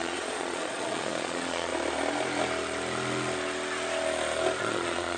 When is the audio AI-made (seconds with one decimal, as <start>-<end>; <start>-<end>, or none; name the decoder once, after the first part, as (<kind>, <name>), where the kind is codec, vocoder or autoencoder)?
0.0-1.7 (vocoder, Vocos); 4.6-5.2